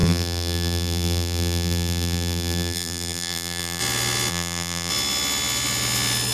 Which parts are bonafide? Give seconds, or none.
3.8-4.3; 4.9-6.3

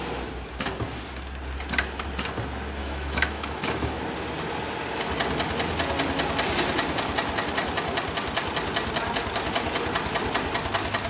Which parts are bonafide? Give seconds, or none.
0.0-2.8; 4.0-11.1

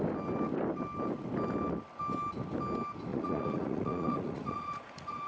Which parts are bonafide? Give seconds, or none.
0.0-3.1

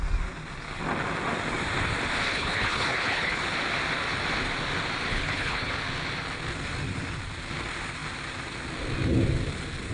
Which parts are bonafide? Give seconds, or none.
0.0-2.3; 3.4-5.1; 5.7-9.9

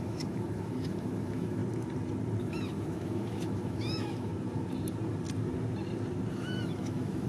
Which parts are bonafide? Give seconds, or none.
1.6-2.4; 4.3-6.3

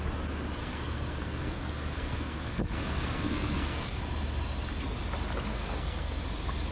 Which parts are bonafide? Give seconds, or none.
0.0-0.6; 4.0-5.5; 6.2-6.7

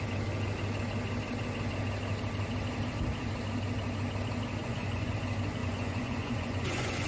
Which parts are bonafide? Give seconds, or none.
0.0-4.6; 5.1-5.6

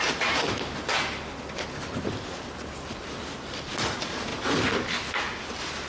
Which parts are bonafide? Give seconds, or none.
0.0-5.9